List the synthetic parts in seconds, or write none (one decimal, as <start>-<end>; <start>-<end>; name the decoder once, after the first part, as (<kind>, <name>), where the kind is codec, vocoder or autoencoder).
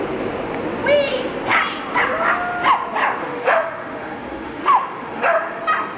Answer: 3.2-5.6 (autoencoder, DAC-VAE)